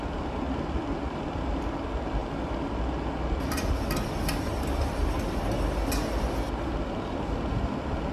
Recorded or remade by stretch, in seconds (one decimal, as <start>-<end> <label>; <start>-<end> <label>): 0.0-2.2 recorded; 2.2-2.7 remade; 2.7-8.1 recorded